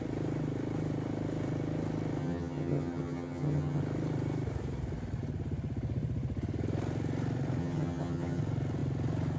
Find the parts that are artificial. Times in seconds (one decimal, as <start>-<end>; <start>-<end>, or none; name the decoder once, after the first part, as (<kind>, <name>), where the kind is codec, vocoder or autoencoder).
2.2-3.8 (vocoder, HiFi-GAN); 7.6-8.4